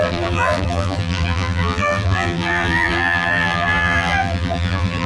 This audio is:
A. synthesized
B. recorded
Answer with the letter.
A